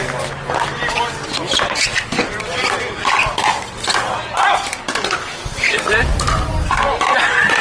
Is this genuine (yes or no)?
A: yes